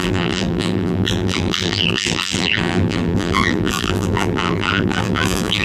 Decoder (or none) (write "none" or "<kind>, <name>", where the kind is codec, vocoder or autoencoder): vocoder, BigVGAN v2